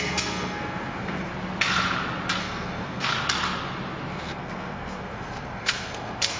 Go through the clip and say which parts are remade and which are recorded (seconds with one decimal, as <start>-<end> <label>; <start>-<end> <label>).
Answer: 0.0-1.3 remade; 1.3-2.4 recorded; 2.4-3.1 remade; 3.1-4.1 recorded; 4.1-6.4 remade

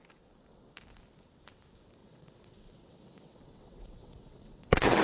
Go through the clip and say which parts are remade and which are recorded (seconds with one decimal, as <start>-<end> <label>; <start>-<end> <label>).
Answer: 0.0-2.0 recorded; 2.0-5.0 remade

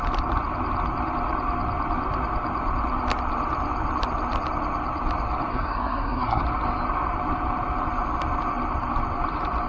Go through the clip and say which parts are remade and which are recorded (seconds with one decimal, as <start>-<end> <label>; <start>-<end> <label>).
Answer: 0.0-5.5 recorded; 5.5-6.4 remade; 6.4-9.7 recorded